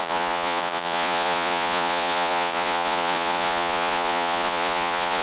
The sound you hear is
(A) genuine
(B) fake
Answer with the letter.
B